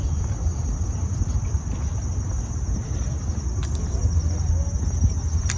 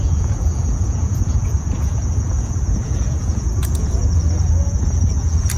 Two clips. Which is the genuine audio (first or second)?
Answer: first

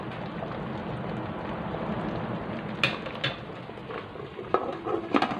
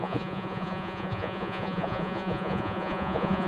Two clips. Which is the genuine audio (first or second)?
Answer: first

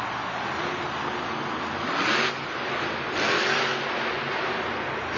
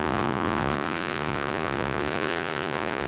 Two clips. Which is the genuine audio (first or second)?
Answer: first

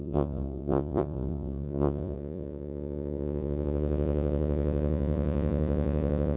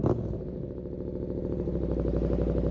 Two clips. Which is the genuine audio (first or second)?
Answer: second